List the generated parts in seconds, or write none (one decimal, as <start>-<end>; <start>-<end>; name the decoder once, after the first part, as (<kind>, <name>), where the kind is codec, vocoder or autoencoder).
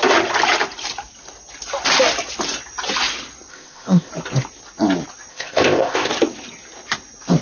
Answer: 3.5-4.1 (codec, ZipCodec); 5.3-6.1